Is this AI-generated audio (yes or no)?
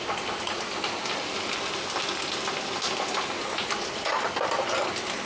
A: no